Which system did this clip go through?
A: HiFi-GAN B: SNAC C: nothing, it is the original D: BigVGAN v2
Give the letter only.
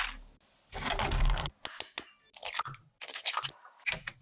C